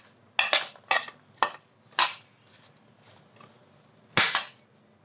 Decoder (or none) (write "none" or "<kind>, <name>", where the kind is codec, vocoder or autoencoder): none